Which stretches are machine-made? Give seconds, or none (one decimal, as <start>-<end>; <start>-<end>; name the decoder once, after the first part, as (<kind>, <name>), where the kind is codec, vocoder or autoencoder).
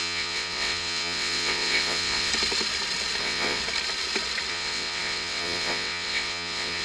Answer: 0.0-2.3 (vocoder, WaveNeXt); 3.2-3.6; 4.5-6.8